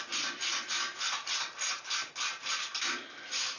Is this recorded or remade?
recorded